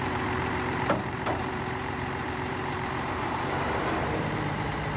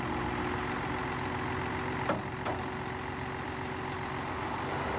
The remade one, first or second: first